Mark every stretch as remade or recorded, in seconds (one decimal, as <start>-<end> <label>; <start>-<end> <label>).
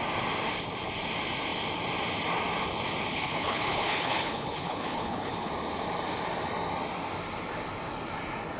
0.0-3.1 recorded; 3.1-5.5 remade; 5.5-8.6 recorded